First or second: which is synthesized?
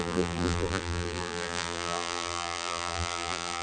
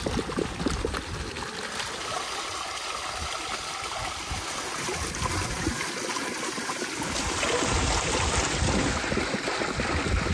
first